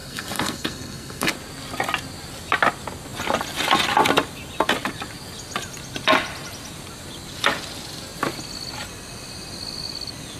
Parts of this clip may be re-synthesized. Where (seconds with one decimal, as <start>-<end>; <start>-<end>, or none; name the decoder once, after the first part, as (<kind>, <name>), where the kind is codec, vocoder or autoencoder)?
0.0-1.3 (codec, SNAC)